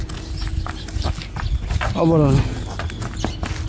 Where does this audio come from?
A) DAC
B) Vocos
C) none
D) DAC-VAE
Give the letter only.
C